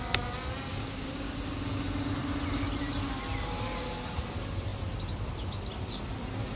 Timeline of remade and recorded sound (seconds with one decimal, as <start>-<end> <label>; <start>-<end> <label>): 0.0-0.7 recorded; 0.7-1.3 remade; 1.3-6.6 recorded

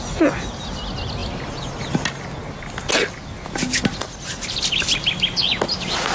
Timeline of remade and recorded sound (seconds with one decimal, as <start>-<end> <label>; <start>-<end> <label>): 0.0-6.1 recorded

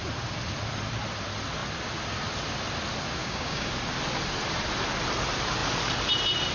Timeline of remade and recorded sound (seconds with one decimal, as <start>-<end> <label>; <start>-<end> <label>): 0.0-3.2 recorded; 3.2-3.7 remade; 3.7-6.5 recorded

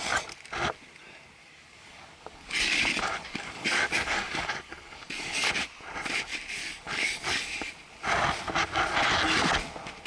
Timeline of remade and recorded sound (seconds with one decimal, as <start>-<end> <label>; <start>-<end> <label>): 0.0-1.4 recorded; 1.4-5.5 remade; 5.5-6.6 recorded; 6.6-7.7 remade; 7.7-10.1 recorded